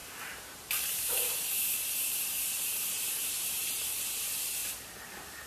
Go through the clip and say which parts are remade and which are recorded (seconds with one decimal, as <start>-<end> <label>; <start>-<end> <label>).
0.0-4.6 remade; 4.6-5.1 recorded; 5.1-5.5 remade